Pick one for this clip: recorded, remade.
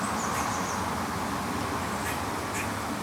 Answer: recorded